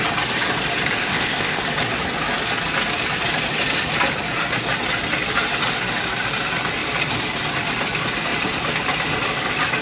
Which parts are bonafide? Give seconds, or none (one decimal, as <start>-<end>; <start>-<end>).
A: 0.0-1.0; 1.6-9.8